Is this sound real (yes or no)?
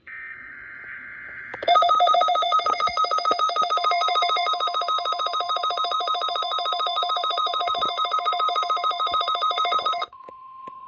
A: no